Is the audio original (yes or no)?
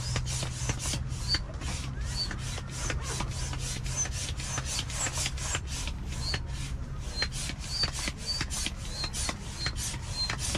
yes